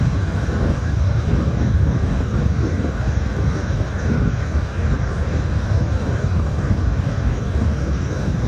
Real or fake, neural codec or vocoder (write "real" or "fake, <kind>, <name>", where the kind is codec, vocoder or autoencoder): fake, codec, DAC